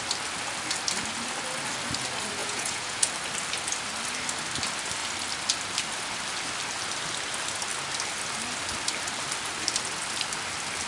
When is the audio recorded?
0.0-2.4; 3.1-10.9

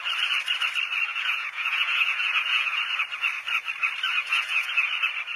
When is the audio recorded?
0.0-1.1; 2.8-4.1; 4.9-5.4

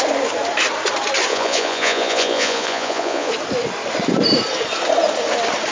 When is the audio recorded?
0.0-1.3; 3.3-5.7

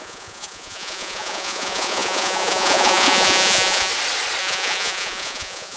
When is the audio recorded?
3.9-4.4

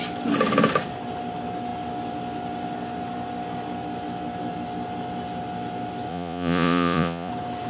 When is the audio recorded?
0.0-6.1; 7.3-7.7

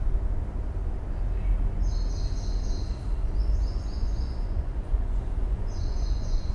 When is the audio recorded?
0.0-3.2

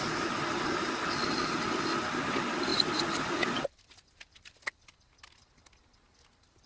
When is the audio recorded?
0.0-6.7

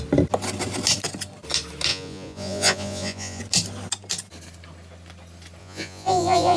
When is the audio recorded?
0.0-1.9; 3.4-5.6